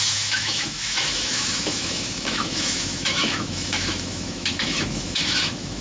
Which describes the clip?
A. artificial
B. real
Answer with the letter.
A